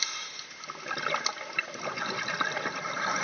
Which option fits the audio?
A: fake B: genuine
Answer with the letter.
B